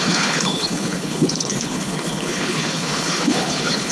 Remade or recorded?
remade